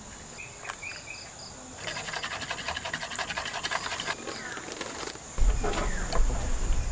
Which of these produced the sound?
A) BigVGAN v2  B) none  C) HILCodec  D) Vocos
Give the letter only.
B